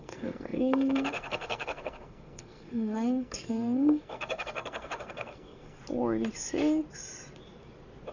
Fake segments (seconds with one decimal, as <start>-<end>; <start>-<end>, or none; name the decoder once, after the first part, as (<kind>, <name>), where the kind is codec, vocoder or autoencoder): 0.0-5.8 (codec, SNAC)